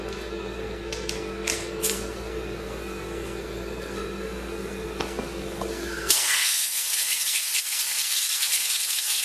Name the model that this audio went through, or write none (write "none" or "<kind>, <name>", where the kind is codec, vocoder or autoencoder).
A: codec, SNAC